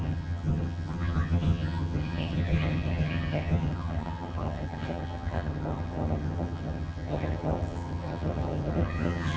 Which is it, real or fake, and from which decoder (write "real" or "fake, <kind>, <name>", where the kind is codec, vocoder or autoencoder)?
fake, vocoder, HiFi-GAN